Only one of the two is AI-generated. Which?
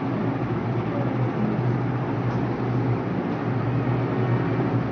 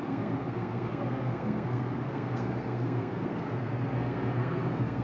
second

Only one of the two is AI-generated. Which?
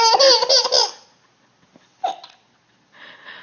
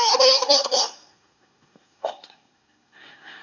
second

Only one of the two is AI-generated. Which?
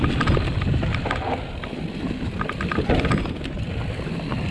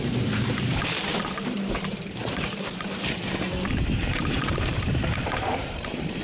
second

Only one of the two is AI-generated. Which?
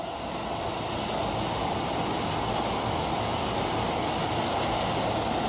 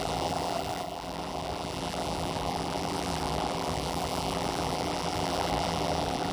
second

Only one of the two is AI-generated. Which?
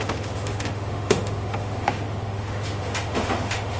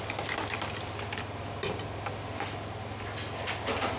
first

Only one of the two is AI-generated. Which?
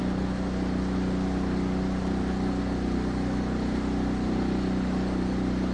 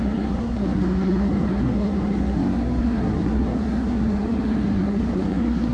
second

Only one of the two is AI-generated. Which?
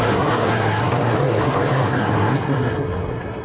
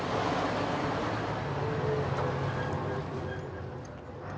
first